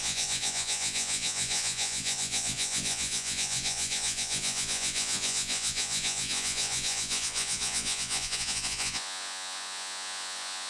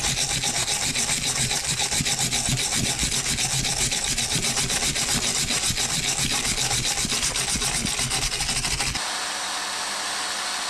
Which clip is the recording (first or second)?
second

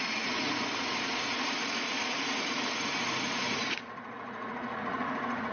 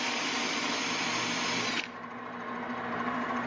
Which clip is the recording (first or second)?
second